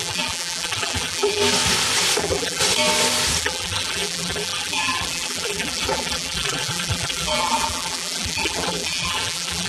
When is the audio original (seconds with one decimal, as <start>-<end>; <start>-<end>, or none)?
1.4-2.2; 2.6-3.4

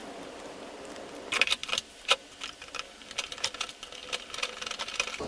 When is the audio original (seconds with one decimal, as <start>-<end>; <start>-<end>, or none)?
1.1-1.6; 3.1-5.3